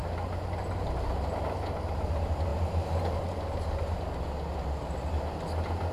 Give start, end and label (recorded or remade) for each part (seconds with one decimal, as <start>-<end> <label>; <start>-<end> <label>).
0.0-5.9 recorded

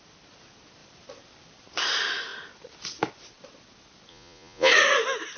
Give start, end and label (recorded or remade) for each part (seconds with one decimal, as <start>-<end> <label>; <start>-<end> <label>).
0.0-4.1 recorded; 4.1-4.7 remade; 4.7-5.4 recorded

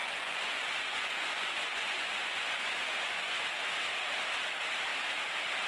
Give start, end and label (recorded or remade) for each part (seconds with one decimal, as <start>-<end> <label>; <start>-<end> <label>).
0.0-3.4 remade; 3.4-5.7 recorded

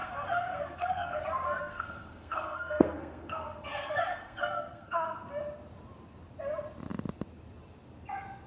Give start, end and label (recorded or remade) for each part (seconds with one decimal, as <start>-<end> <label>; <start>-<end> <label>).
0.0-1.2 remade; 1.2-1.6 recorded; 1.6-5.2 remade; 5.2-8.5 recorded

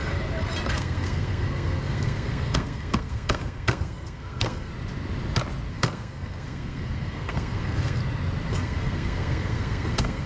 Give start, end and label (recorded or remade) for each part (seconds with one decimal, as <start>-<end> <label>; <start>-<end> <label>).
0.0-0.7 recorded; 0.7-4.7 remade; 4.7-5.7 recorded; 5.7-8.0 remade; 8.0-8.5 recorded; 8.5-10.3 remade

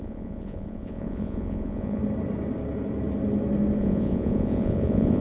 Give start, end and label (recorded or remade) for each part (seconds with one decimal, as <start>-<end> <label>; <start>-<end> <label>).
0.0-2.0 remade; 2.0-3.8 recorded; 3.8-5.2 remade

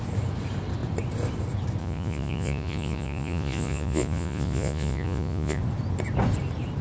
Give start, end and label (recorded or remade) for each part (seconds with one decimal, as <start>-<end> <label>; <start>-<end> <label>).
0.0-1.8 recorded; 1.8-5.6 remade; 5.6-6.8 recorded

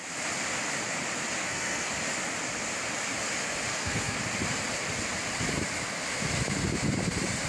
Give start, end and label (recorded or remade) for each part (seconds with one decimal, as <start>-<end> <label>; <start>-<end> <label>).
0.0-1.4 recorded; 1.4-1.9 remade; 1.9-3.7 recorded; 3.7-4.2 remade; 4.2-7.5 recorded